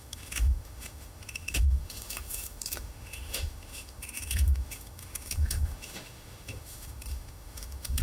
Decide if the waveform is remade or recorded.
remade